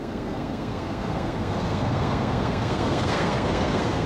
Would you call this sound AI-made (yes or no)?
yes